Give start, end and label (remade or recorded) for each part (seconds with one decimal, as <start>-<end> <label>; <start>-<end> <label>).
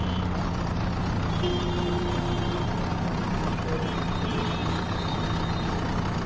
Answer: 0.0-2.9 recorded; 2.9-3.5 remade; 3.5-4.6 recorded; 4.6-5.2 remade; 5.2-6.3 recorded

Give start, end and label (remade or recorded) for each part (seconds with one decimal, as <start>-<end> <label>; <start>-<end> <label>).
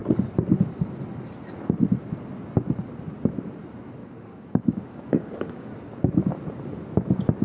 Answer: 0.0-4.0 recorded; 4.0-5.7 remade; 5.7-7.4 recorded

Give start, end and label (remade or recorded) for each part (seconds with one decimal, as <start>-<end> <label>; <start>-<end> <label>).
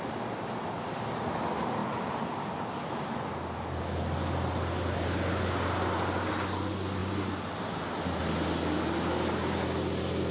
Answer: 0.0-10.3 recorded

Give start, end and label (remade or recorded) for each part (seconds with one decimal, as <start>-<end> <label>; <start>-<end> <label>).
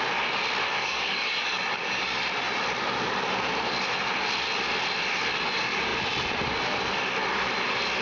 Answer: 0.0-0.8 recorded; 0.8-2.2 remade; 2.2-8.0 recorded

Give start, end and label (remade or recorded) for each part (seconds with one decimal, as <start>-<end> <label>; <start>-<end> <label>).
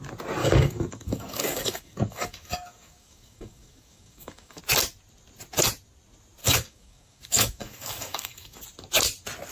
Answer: 0.0-0.4 recorded; 0.4-4.6 remade; 4.6-6.4 recorded; 6.4-8.6 remade; 8.6-9.5 recorded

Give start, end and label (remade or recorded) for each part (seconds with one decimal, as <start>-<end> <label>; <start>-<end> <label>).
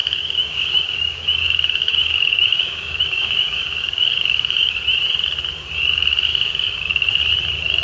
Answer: 0.0-4.7 remade; 4.7-6.3 recorded; 6.3-6.9 remade; 6.9-7.8 recorded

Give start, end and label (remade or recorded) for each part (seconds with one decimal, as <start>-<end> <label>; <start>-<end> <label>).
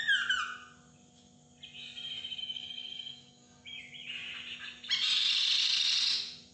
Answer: 0.0-2.4 recorded; 2.4-3.8 remade; 3.8-6.5 recorded